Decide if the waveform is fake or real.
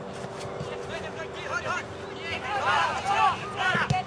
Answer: real